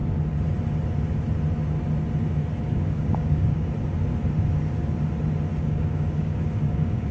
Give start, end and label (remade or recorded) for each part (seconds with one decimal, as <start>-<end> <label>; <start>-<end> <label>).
0.0-2.7 recorded; 2.7-3.7 remade; 3.7-5.6 recorded; 5.6-7.1 remade